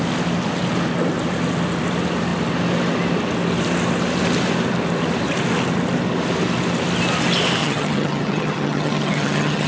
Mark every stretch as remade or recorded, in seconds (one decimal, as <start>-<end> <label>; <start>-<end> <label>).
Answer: 0.0-7.6 recorded; 7.6-9.7 remade